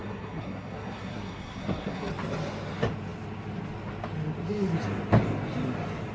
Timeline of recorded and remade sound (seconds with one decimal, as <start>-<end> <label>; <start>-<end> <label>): 0.0-2.1 remade; 2.1-6.1 recorded